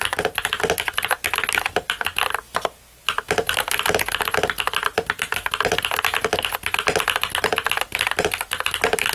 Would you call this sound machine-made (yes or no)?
no